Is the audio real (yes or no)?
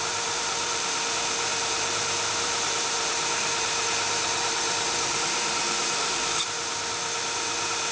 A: no